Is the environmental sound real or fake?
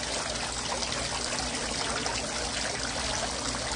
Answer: real